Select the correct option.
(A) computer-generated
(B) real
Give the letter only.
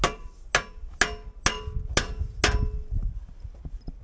B